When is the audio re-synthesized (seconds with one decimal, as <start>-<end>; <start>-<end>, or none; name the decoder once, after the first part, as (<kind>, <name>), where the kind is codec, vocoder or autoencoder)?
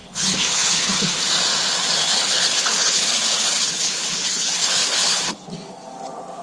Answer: 0.0-1.2 (codec, HILCodec); 2.0-5.5